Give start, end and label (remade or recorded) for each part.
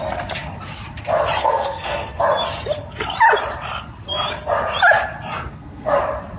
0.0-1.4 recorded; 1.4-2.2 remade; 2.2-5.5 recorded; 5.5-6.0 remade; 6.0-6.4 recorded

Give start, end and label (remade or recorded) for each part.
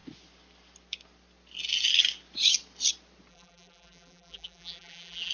0.0-3.3 recorded; 3.3-5.3 remade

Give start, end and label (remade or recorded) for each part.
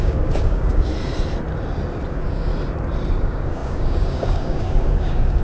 0.0-0.9 remade; 0.9-2.1 recorded; 2.1-2.5 remade; 2.5-3.2 recorded; 3.2-5.4 remade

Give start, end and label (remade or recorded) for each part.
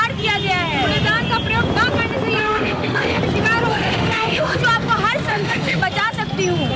0.0-2.4 recorded; 2.4-3.2 remade; 3.2-3.7 recorded; 3.7-4.6 remade; 4.6-5.3 recorded; 5.3-5.8 remade; 5.8-6.8 recorded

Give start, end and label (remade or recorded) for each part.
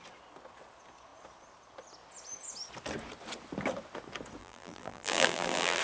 0.0-4.4 recorded; 4.4-5.8 remade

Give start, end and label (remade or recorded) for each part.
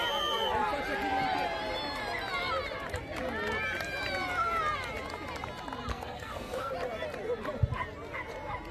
0.0-5.9 recorded; 5.9-6.7 remade; 6.7-8.7 recorded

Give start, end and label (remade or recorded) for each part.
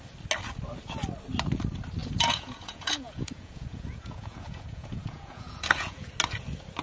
0.0-2.0 recorded; 2.0-6.1 remade; 6.1-6.8 recorded